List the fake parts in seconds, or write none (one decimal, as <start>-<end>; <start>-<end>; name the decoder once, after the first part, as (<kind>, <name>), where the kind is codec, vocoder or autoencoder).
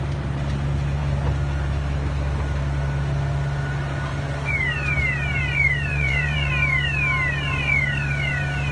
5.9-6.5 (vocoder, Vocos)